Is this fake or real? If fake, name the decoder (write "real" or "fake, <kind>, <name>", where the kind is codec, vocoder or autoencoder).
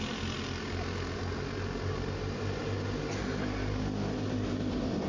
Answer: real